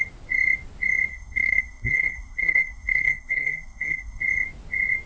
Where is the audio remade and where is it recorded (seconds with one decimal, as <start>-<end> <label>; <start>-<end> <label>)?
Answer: 0.0-1.1 recorded; 1.1-4.2 remade; 4.2-5.1 recorded